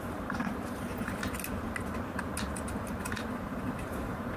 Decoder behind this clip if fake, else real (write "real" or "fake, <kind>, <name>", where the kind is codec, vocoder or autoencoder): real